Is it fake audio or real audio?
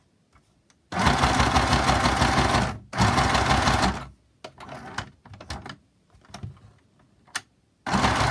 real